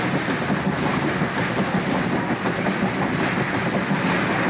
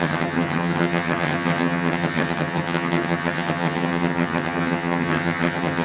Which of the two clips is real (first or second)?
first